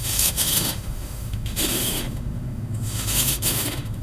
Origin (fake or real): fake